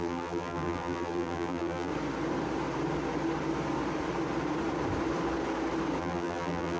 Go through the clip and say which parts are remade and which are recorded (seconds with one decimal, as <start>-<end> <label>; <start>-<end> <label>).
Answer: 0.0-1.9 remade; 1.9-6.0 recorded; 6.0-6.8 remade

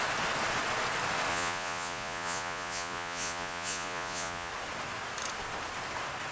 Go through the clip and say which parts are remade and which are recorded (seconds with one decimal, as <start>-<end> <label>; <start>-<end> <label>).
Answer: 0.0-1.3 recorded; 1.3-4.5 remade; 4.5-6.3 recorded

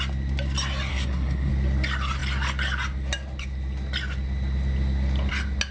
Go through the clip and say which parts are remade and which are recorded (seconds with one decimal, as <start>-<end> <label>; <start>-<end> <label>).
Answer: 0.0-0.9 recorded; 0.9-1.5 remade; 1.5-5.7 recorded

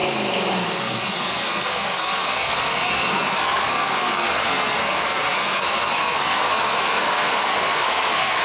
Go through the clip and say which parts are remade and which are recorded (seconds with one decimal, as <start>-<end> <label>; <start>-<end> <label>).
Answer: 0.0-0.8 recorded; 0.8-8.4 remade

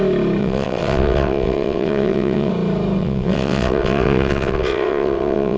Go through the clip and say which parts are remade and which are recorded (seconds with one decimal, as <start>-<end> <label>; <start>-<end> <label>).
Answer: 0.0-0.4 recorded; 0.4-2.5 remade; 2.5-3.0 recorded; 3.0-5.6 remade